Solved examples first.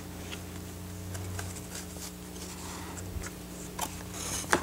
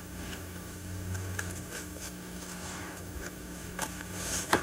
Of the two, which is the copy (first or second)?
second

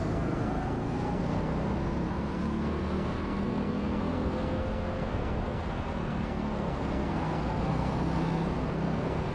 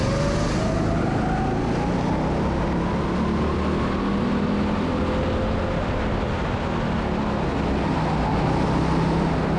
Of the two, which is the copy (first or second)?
first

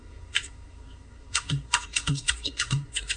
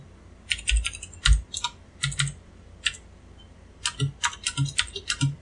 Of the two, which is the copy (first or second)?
first